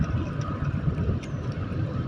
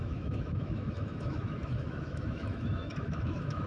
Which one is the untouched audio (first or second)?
first